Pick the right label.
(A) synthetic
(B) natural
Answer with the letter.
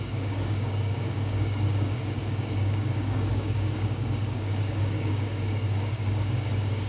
A